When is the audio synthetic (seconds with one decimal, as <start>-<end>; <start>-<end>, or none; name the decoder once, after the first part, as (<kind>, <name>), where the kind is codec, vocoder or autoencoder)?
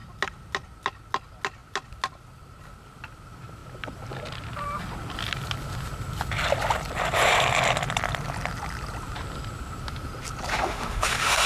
10.5-11.5 (autoencoder, DAC-VAE)